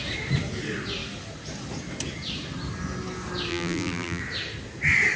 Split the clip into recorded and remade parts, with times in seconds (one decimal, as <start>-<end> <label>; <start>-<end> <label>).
0.0-3.5 recorded; 3.5-4.2 remade; 4.2-5.2 recorded